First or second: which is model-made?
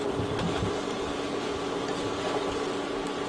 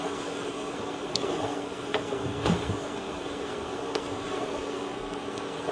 second